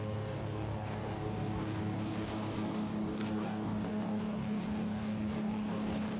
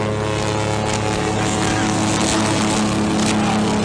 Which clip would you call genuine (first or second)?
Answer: second